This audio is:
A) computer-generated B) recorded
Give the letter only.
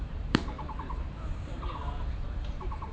A